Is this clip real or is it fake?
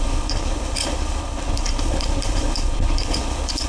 fake